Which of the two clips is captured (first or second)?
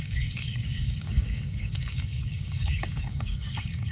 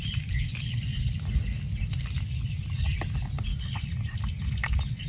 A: second